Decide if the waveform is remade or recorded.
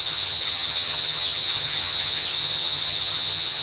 remade